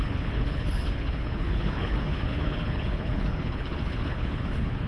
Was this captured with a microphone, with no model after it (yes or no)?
no